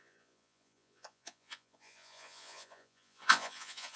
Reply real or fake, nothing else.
fake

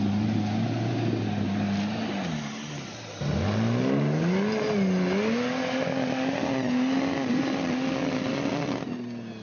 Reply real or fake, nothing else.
real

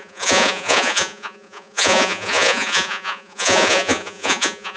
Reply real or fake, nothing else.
fake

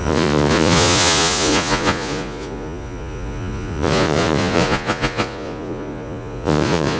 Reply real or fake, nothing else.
fake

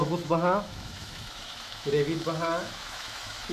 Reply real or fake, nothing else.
fake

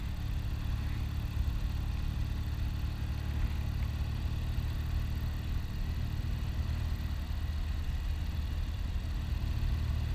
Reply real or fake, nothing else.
real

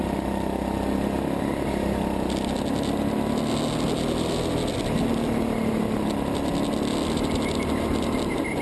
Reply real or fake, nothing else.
real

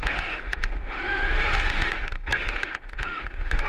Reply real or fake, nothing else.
fake